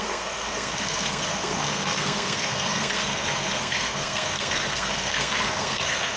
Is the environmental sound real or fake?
fake